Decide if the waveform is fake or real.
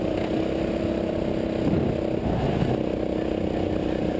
real